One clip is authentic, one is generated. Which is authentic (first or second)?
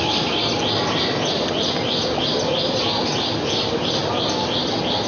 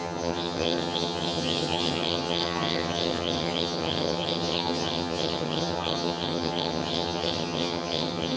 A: first